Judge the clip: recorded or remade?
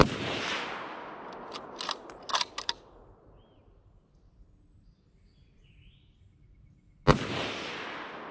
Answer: recorded